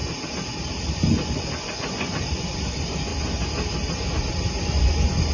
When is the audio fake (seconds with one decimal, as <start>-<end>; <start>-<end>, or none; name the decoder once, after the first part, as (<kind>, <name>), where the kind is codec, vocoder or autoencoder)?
0.9-3.1 (vocoder, Vocos); 4.6-5.3